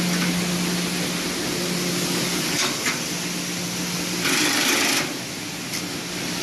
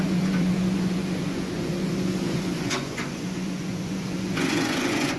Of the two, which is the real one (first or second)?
first